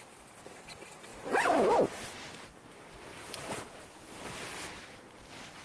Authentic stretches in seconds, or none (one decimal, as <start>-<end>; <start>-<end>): 0.0-3.1; 3.8-5.6